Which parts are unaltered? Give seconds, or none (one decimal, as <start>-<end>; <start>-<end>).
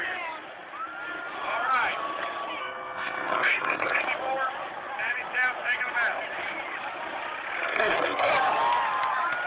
0.0-2.6; 4.0-7.6; 8.3-9.5